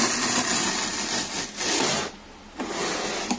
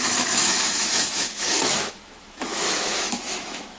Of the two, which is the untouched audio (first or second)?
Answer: first